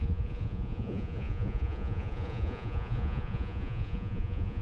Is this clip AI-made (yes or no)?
yes